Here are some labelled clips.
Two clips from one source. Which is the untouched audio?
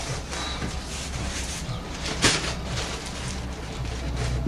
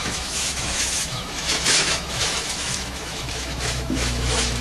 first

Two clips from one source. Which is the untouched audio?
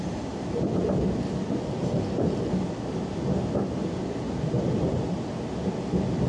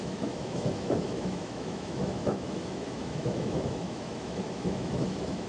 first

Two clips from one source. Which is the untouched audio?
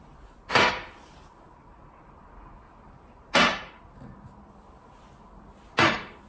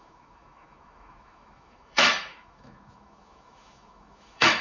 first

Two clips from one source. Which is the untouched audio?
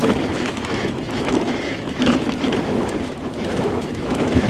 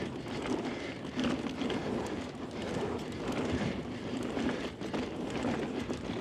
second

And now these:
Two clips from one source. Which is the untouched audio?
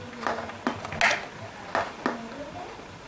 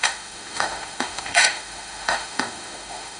first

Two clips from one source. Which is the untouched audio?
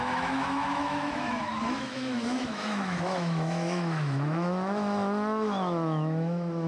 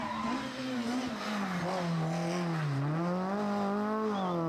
second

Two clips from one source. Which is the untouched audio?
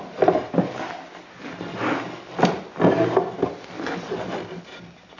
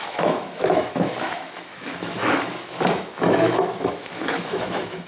first